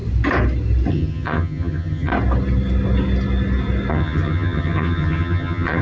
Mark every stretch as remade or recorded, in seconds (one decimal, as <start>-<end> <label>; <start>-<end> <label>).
0.0-0.9 recorded; 0.9-2.1 remade; 2.1-3.9 recorded; 3.9-5.8 remade